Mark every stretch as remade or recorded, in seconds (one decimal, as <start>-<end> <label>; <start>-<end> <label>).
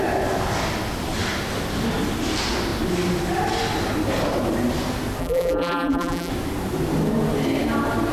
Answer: 0.0-5.2 recorded; 5.2-6.3 remade; 6.3-8.1 recorded